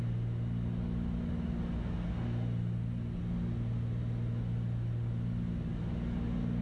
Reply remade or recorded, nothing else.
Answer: recorded